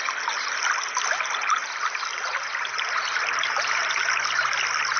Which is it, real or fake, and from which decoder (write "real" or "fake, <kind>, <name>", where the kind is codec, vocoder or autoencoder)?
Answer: real